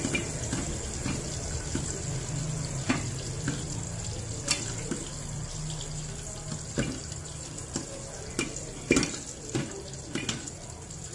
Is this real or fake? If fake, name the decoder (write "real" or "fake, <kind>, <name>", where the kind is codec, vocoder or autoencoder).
real